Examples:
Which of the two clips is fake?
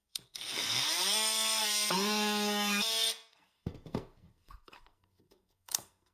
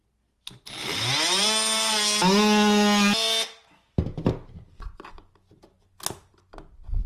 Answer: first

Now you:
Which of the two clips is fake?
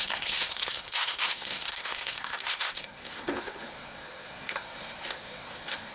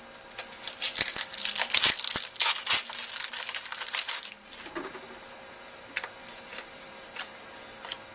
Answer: first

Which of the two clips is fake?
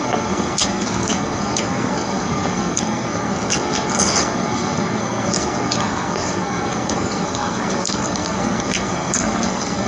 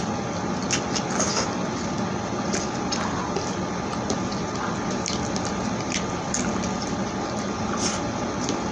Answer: first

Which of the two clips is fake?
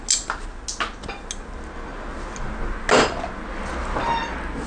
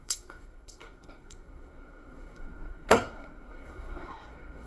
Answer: second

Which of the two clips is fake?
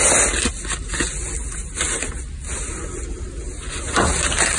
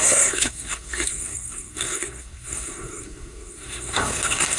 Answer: second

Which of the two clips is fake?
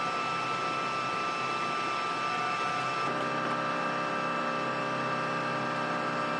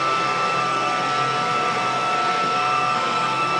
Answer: second